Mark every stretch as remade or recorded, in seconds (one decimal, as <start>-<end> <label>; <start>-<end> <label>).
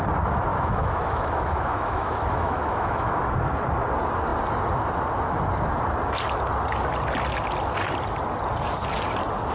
0.0-0.5 recorded; 0.5-3.1 remade; 3.1-9.5 recorded